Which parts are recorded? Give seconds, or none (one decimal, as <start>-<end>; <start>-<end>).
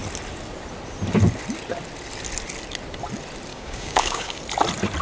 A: 0.0-3.5; 4.4-5.0